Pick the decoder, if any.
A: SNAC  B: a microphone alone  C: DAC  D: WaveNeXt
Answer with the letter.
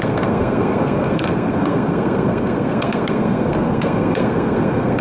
A